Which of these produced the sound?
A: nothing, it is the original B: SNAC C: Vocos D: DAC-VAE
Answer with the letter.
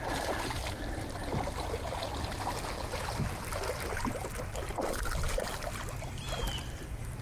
A